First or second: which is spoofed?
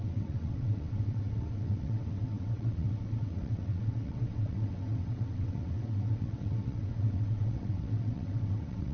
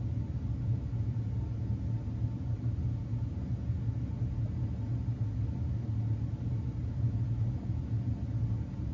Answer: first